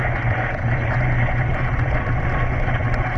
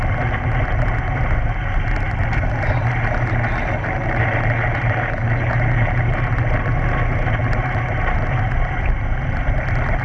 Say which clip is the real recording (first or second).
second